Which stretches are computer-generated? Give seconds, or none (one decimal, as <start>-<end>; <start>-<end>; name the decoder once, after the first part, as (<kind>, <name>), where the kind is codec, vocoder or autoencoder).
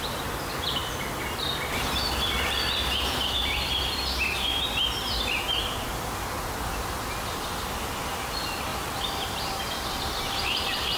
8.7-9.6 (vocoder, BigVGAN v2)